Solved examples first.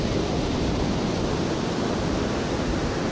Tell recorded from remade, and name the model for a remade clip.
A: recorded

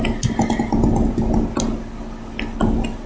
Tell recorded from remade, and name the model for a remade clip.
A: recorded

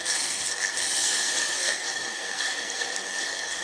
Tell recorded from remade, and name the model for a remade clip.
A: remade, codec, SNAC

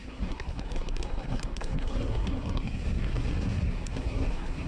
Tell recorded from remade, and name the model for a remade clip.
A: remade, codec, SNAC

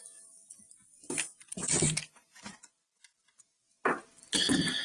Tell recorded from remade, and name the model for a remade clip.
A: recorded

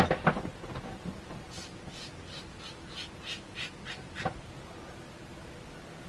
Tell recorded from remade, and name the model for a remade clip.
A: recorded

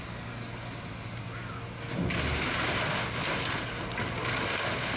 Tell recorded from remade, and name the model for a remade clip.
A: recorded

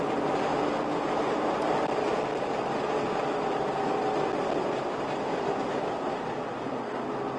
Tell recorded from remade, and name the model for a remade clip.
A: recorded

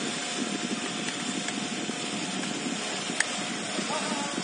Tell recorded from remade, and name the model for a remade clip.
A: recorded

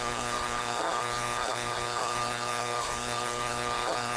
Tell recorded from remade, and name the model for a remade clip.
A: remade, codec, SNAC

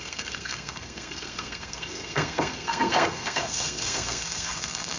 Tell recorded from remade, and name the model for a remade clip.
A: remade, codec, SNAC